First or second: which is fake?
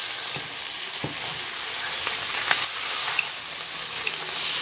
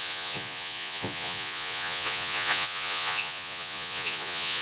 second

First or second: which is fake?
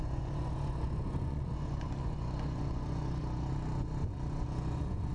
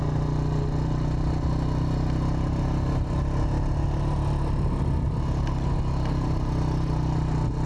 first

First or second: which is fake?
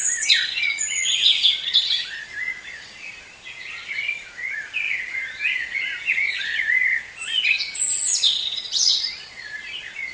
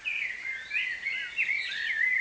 first